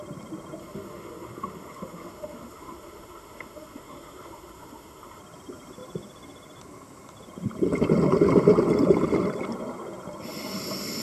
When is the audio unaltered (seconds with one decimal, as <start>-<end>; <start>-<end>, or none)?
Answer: 0.0-0.6; 5.2-11.0